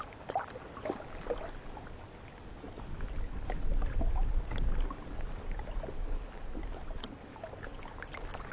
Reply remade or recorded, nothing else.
recorded